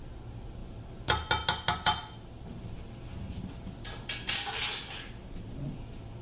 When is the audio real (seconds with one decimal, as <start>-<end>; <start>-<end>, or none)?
0.0-6.2